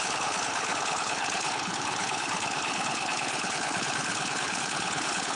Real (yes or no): no